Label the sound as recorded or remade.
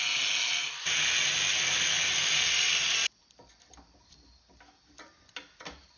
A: recorded